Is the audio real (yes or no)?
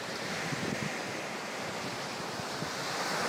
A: yes